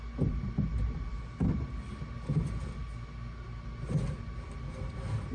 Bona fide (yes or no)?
yes